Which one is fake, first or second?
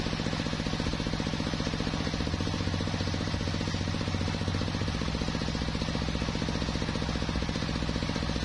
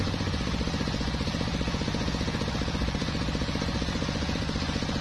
second